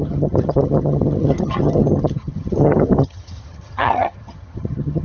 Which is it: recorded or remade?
remade